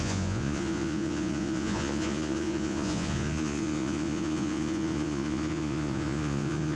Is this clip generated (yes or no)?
yes